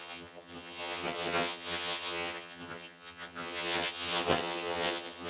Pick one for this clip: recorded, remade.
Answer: remade